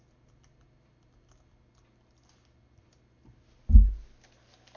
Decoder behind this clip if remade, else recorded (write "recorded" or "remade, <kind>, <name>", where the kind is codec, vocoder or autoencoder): recorded